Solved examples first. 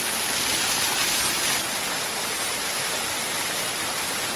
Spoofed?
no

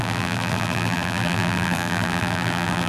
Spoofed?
yes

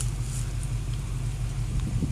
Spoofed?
no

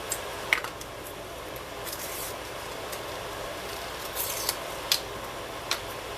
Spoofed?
yes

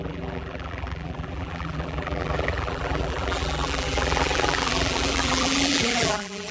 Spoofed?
yes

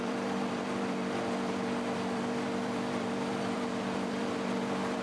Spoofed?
yes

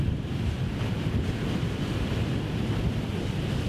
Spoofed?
no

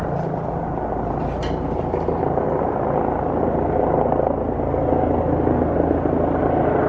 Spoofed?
no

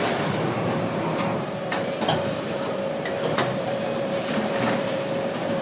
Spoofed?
yes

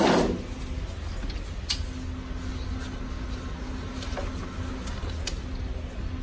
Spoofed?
no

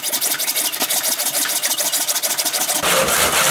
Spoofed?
no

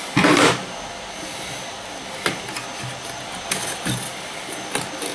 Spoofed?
no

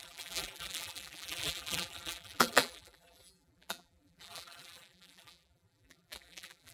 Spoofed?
yes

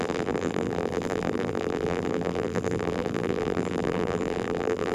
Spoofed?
yes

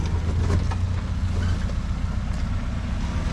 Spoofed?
no